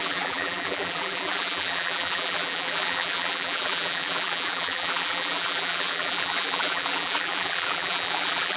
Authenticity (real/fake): fake